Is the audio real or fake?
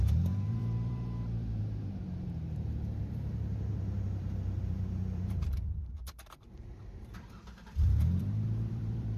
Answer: fake